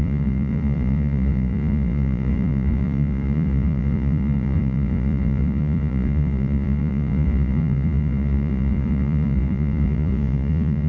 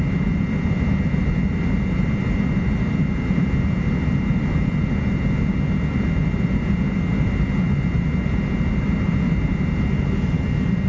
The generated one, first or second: first